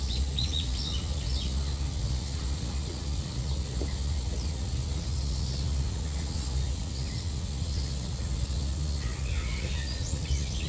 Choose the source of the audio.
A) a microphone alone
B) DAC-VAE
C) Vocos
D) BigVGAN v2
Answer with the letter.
C